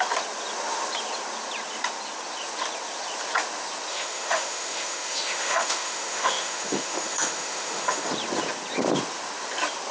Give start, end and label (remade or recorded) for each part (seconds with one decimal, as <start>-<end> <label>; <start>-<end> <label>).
0.0-3.9 recorded; 3.9-8.1 remade; 8.1-9.9 recorded